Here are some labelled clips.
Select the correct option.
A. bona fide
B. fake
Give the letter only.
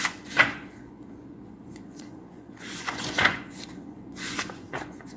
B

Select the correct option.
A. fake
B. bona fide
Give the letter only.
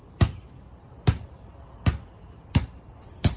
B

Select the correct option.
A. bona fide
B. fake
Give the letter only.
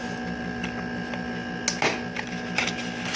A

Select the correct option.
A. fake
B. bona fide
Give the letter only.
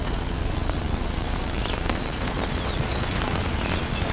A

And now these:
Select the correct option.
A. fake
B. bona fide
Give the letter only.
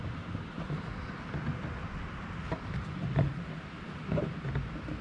B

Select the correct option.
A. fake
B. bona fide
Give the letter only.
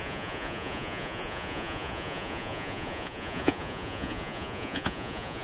A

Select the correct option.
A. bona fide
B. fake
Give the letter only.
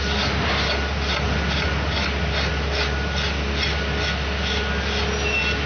A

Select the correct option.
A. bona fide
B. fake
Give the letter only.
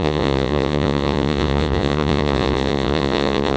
B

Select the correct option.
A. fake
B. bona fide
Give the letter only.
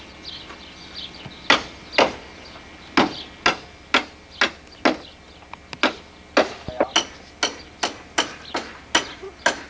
B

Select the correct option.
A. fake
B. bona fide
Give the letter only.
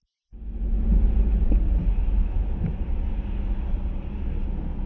B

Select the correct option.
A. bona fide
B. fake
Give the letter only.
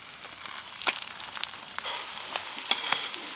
A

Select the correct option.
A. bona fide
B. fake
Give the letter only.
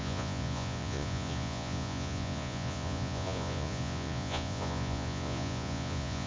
B